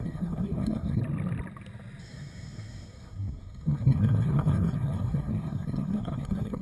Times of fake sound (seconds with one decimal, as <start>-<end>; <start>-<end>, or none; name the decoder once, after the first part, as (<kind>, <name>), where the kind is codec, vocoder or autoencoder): 0.0-1.0 (codec, SNAC); 2.0-6.6